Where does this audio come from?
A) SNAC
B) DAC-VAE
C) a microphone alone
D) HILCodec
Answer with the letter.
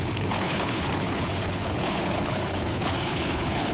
D